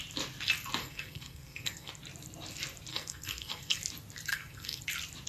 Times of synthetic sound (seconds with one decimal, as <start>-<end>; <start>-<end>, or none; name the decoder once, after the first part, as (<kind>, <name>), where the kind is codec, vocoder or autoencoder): 0.8-1.9 (codec, SNAC); 2.9-3.8; 4.3-4.8